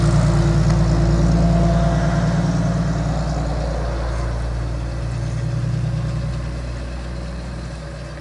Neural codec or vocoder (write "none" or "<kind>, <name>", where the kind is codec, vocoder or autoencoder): none